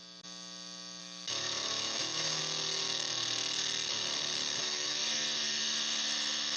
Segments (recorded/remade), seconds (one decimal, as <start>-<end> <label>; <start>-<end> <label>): 0.0-1.0 recorded; 1.0-2.4 remade; 2.4-4.6 recorded; 4.6-5.0 remade; 5.0-6.6 recorded

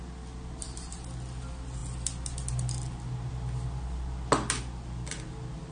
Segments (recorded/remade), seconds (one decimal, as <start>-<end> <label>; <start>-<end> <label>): 0.0-5.7 recorded

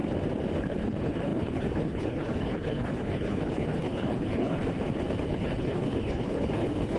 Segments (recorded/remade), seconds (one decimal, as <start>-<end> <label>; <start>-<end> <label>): 0.0-0.6 recorded; 0.6-4.6 remade; 4.6-5.3 recorded; 5.3-7.0 remade

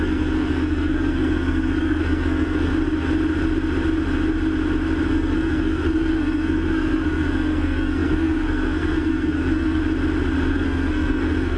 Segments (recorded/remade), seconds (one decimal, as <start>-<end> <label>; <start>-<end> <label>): 0.0-2.7 remade; 2.7-5.1 recorded; 5.1-9.8 remade; 9.8-10.5 recorded; 10.5-11.6 remade